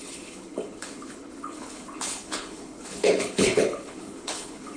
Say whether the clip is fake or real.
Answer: fake